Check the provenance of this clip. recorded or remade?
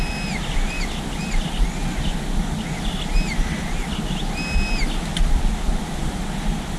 recorded